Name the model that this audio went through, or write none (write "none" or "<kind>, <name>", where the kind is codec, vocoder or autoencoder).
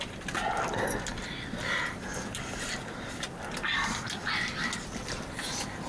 none